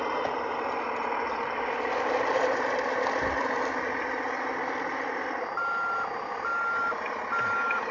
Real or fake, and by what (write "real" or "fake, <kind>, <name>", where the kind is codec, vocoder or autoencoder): fake, vocoder, BigVGAN v2